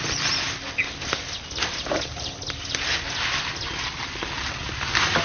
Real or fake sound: real